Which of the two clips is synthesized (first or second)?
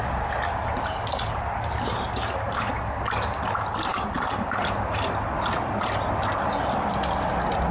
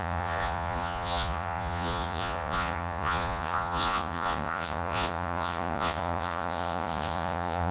second